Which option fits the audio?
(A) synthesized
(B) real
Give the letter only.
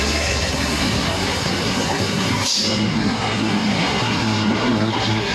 A